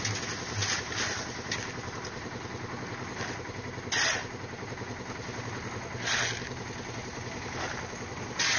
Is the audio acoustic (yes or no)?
yes